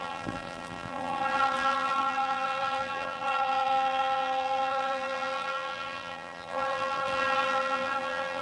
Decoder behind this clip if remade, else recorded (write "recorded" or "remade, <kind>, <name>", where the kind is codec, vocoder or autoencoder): remade, vocoder, BigVGAN v2